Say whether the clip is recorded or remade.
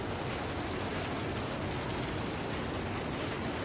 recorded